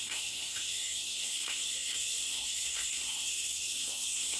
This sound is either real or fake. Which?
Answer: fake